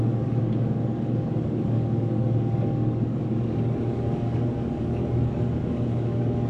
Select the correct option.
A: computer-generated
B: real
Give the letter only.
A